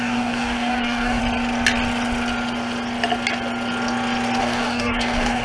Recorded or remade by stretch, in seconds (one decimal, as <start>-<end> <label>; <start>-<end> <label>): 0.0-1.2 remade; 1.2-4.4 recorded; 4.4-5.4 remade